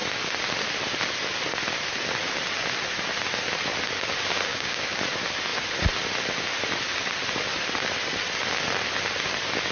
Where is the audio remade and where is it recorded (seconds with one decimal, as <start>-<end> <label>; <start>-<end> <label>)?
0.0-4.5 recorded; 4.5-5.0 remade; 5.0-9.7 recorded

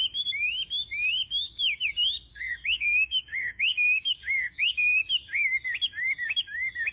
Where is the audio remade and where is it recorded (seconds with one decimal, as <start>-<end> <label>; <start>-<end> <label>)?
0.0-1.2 recorded; 1.2-1.9 remade; 1.9-2.3 recorded; 2.3-4.8 remade; 4.8-6.9 recorded

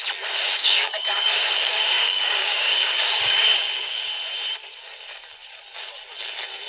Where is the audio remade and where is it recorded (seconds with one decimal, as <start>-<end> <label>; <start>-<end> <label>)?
0.0-0.6 recorded; 0.6-4.1 remade; 4.1-6.7 recorded

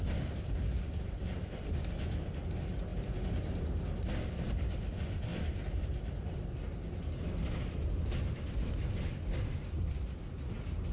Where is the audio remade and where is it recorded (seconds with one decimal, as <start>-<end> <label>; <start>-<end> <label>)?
0.0-10.9 recorded

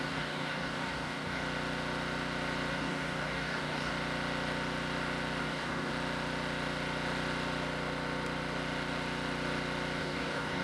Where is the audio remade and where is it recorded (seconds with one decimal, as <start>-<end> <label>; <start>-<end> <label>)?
0.0-1.4 remade; 1.4-2.7 recorded; 2.7-3.9 remade; 3.9-5.4 recorded; 5.4-5.9 remade; 5.9-10.0 recorded; 10.0-10.6 remade

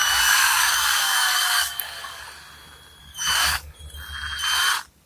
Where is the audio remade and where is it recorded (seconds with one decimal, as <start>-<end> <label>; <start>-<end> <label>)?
0.0-2.2 remade; 2.2-3.0 recorded; 3.0-3.8 remade; 3.8-5.1 recorded